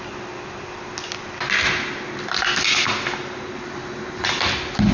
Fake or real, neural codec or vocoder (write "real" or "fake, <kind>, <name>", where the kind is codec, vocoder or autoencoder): real